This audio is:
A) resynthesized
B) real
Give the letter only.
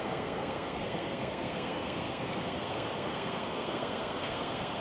A